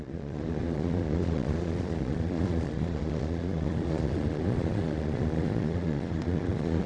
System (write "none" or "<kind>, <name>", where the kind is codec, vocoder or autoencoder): vocoder, Vocos